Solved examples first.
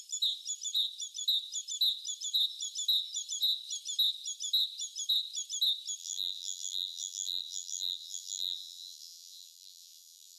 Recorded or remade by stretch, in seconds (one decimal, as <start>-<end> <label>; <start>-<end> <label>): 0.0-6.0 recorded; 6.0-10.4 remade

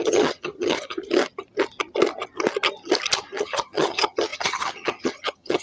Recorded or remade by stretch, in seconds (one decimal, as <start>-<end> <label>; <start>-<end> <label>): 0.0-1.0 remade; 1.0-3.4 recorded; 3.4-5.6 remade

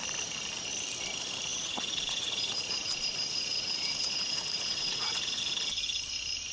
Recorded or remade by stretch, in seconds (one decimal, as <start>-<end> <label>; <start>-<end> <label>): 0.0-1.5 recorded; 1.5-5.4 remade; 5.4-6.5 recorded

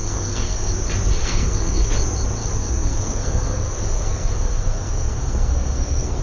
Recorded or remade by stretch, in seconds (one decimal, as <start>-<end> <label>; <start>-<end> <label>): 0.0-0.7 remade; 0.7-1.2 recorded; 1.2-1.9 remade; 1.9-2.4 recorded; 2.4-6.2 remade

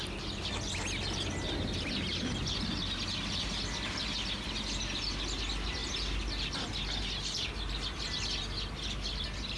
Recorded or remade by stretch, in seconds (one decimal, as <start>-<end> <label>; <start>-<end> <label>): 0.0-9.6 recorded

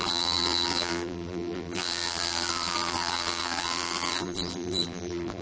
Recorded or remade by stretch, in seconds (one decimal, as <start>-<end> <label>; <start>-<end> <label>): 0.0-5.4 remade

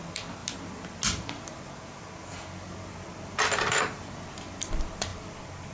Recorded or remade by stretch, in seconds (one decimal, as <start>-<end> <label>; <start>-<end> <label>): 0.0-5.7 recorded